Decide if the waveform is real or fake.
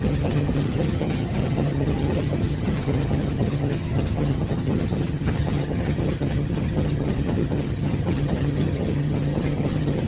fake